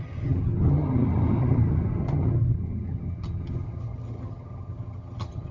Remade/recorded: remade